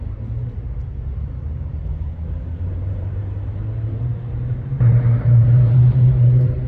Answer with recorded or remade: remade